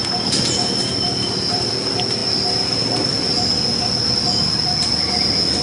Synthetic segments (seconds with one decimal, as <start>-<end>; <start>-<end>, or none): 0.0-1.7